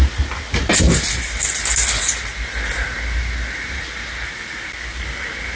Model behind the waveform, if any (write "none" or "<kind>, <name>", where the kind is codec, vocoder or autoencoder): none